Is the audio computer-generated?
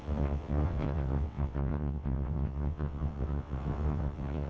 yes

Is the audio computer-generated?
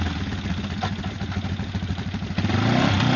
no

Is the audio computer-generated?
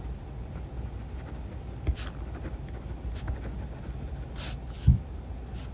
no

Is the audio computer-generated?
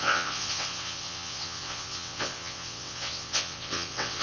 yes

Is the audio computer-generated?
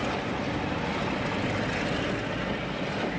no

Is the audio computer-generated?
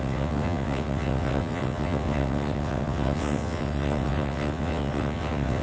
yes